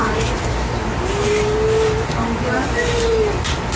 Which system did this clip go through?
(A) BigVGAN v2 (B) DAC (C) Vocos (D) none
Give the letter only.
D